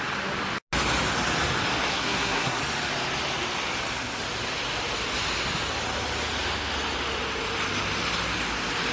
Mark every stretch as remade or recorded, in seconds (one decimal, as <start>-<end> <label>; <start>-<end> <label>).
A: 0.0-1.9 recorded; 1.9-2.6 remade; 2.6-8.9 recorded